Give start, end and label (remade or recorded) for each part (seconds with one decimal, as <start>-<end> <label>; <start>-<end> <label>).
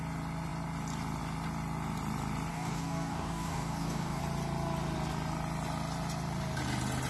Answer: 0.0-2.5 recorded; 2.5-4.2 remade; 4.2-7.1 recorded